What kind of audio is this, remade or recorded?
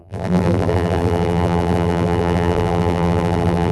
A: remade